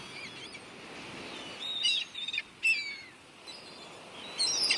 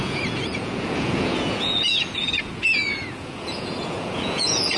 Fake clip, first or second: second